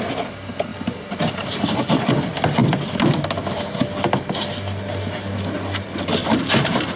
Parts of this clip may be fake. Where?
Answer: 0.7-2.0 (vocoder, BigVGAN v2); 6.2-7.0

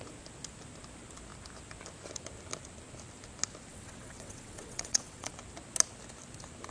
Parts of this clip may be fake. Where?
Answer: 3.7-5.3 (vocoder, WaveNeXt)

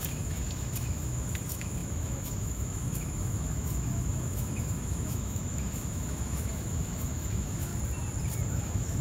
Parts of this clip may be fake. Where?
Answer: 0.0-7.7 (autoencoder, DAC-VAE); 8.5-9.0

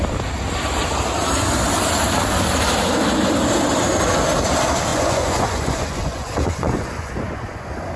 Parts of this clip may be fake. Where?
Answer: 4.9-8.0 (vocoder, Vocos)

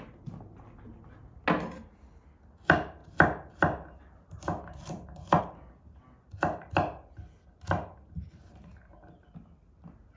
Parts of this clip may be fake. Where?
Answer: none

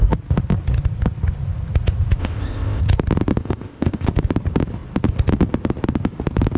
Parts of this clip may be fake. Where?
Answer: 2.2-2.8 (codec, ZipCodec); 3.4-4.1

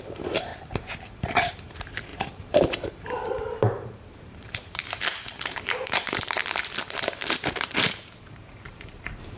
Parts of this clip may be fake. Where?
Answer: 0.0-0.5 (vocoder, BigVGAN v2); 1.1-6.4; 6.9-9.4